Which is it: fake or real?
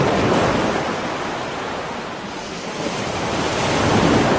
real